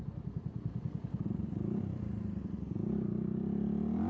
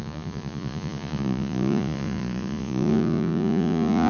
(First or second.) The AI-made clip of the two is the second